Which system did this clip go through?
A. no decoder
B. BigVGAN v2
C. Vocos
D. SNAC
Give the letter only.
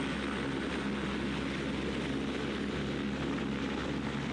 A